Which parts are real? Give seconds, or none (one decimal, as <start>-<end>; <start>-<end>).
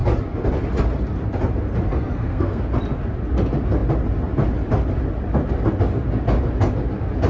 0.0-1.9; 2.6-7.3